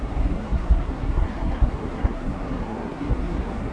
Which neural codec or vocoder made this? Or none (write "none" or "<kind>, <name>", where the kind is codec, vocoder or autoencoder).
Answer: codec, SNAC